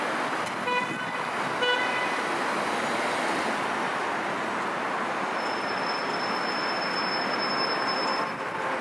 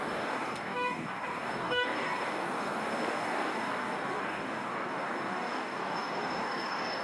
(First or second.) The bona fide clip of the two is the first